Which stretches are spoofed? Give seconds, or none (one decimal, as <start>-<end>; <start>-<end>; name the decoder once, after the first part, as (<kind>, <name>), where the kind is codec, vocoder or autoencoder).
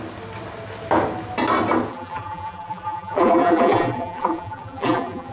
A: 1.9-5.3 (vocoder, BigVGAN v2)